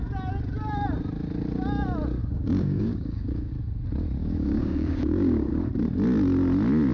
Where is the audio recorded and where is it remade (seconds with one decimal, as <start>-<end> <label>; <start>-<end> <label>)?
0.0-2.2 recorded; 2.2-3.5 remade; 3.5-4.2 recorded; 4.2-5.5 remade; 5.5-6.9 recorded